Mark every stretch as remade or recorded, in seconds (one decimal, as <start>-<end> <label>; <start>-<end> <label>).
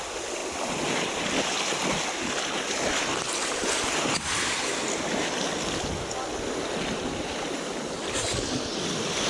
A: 0.0-9.3 recorded